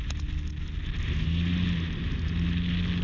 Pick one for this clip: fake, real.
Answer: real